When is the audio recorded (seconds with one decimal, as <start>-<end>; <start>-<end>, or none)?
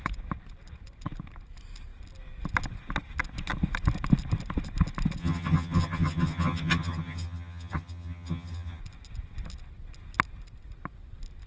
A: 0.0-5.2; 8.8-11.5